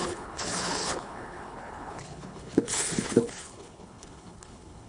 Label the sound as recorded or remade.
remade